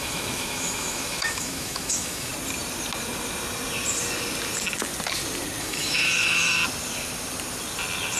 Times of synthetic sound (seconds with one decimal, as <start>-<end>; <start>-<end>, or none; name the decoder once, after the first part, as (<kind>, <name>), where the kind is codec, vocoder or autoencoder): 0.0-2.3 (autoencoder, DAC-VAE); 5.6-6.6